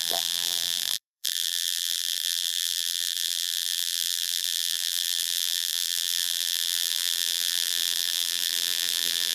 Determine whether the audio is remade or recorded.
remade